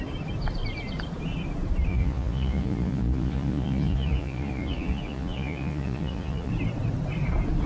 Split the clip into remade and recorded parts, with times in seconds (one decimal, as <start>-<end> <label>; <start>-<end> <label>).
0.0-1.9 recorded; 1.9-6.5 remade; 6.5-7.7 recorded